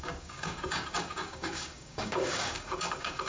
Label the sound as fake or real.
fake